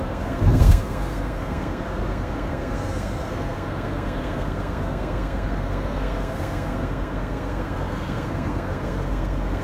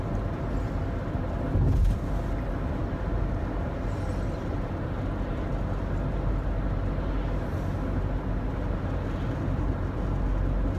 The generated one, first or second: first